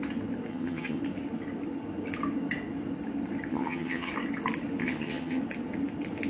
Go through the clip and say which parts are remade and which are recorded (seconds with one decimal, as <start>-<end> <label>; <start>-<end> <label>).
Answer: 0.0-0.5 recorded; 0.5-1.0 remade; 1.0-3.5 recorded; 3.5-4.1 remade; 4.1-4.8 recorded; 4.8-5.4 remade; 5.4-6.3 recorded